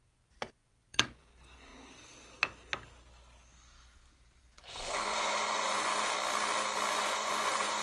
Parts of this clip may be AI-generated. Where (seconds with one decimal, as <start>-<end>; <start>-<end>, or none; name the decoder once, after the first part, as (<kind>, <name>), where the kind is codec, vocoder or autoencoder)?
0.0-1.7 (vocoder, Vocos); 4.4-5.9; 6.9-7.8